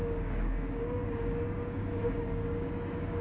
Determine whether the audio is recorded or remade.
remade